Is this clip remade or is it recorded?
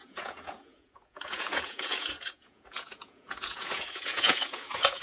remade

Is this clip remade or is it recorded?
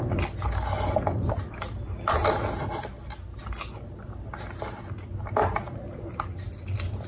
recorded